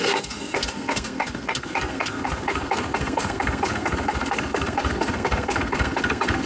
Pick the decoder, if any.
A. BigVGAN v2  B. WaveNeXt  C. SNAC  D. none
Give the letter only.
C